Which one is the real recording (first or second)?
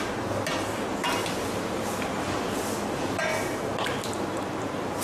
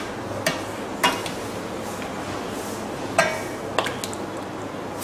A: second